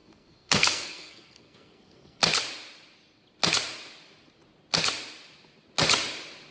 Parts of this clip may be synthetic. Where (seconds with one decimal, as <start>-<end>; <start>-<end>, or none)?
0.0-2.2